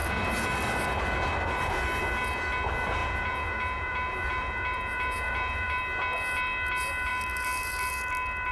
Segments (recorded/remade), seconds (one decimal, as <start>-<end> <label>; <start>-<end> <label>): 0.0-3.0 recorded; 3.0-5.8 remade; 5.8-8.5 recorded